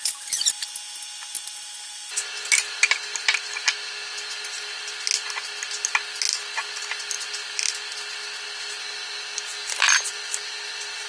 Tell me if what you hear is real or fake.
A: real